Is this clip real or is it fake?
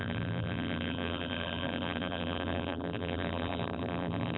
fake